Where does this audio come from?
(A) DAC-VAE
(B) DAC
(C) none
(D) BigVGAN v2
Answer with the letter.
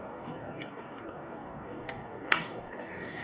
B